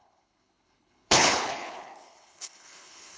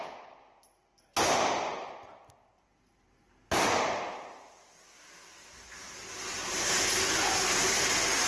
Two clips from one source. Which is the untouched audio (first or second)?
second